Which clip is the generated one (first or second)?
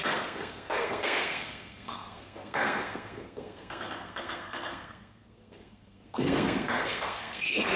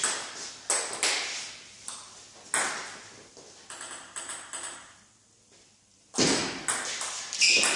first